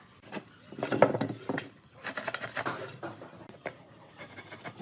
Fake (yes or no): no